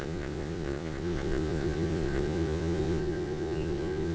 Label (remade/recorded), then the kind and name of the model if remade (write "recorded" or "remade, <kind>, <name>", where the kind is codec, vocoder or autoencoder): remade, vocoder, Vocos